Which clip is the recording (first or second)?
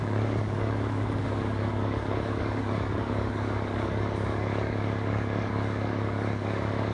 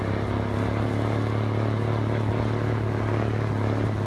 second